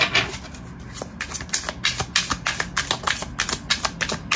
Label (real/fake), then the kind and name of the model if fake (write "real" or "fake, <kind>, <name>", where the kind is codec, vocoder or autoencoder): real